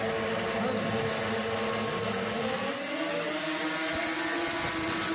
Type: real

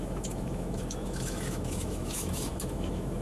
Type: fake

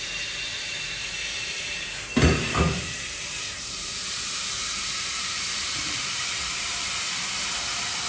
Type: fake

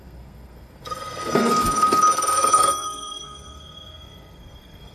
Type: fake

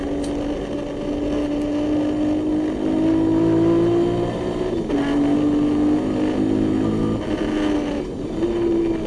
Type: real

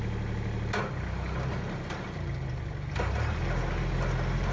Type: real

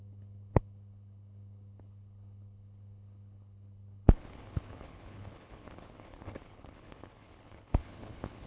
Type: fake